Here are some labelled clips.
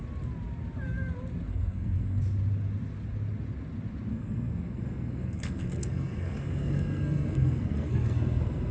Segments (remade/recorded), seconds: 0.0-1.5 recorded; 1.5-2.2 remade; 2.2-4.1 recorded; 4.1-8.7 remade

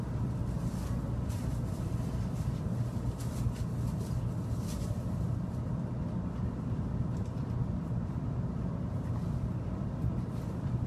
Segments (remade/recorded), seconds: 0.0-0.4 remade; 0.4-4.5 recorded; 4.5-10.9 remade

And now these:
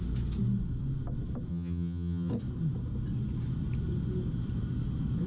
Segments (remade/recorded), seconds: 0.0-1.5 recorded; 1.5-2.3 remade; 2.3-5.3 recorded

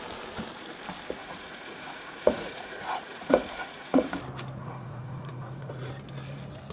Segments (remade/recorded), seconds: 0.0-1.2 recorded; 1.2-4.1 remade; 4.1-4.6 recorded; 4.6-5.9 remade; 5.9-6.7 recorded

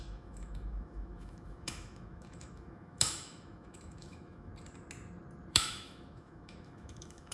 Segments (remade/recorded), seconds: 0.0-4.5 remade; 4.5-5.5 recorded; 5.5-7.3 remade

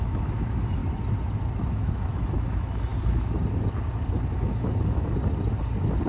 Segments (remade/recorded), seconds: 0.0-0.8 remade; 0.8-1.7 recorded; 1.7-2.9 remade; 2.9-4.3 recorded; 4.3-5.1 remade; 5.1-6.1 recorded

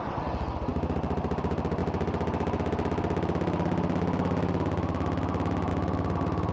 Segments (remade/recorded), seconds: 0.0-6.5 recorded

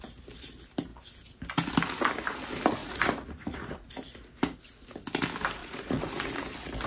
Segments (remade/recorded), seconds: 0.0-2.8 recorded; 2.8-3.9 remade; 3.9-5.6 recorded; 5.6-6.4 remade; 6.4-6.9 recorded